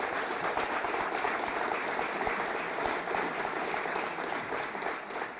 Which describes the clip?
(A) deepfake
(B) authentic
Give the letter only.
A